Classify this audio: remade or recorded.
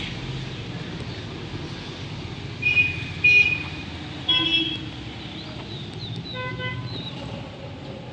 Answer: recorded